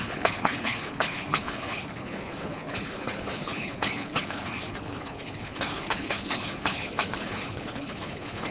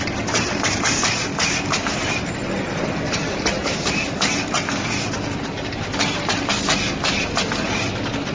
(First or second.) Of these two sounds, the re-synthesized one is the first